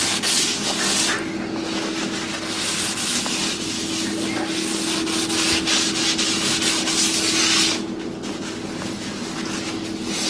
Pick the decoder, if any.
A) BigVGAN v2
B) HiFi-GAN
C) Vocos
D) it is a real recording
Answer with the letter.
D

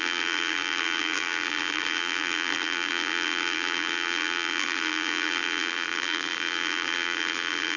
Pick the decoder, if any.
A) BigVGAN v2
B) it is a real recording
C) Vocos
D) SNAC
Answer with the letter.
A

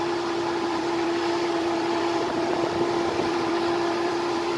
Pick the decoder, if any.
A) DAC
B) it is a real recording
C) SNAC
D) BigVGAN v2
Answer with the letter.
D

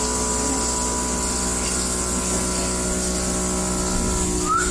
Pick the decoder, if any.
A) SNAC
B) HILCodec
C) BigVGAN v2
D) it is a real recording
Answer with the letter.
D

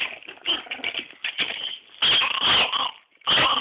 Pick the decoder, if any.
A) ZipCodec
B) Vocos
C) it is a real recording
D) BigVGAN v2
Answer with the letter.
C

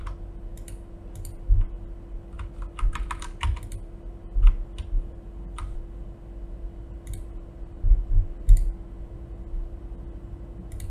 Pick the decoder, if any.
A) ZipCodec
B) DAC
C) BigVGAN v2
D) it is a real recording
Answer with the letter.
D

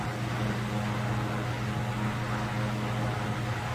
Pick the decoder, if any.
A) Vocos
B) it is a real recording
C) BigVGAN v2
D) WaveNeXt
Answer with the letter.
B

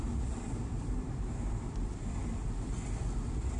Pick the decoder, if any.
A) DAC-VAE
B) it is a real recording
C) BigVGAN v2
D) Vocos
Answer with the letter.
C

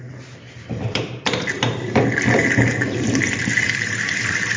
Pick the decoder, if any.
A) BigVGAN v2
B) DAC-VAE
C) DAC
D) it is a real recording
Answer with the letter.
A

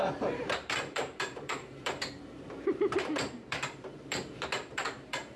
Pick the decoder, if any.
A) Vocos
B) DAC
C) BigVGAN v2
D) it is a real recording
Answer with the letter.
C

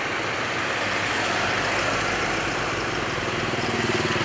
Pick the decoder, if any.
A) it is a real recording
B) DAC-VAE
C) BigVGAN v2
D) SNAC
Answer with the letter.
A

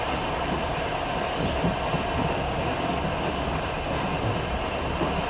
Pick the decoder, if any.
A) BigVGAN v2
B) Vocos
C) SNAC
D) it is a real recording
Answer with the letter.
D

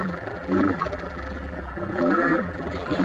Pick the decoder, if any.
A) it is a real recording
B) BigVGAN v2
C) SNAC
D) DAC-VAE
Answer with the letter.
B